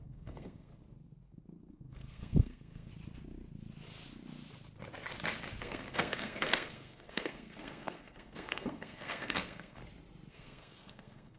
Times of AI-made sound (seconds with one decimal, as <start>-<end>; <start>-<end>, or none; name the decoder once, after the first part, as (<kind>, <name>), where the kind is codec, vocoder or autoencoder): 0.0-0.7 (codec, SNAC); 1.7-2.9; 5.6-9.8; 10.3-11.4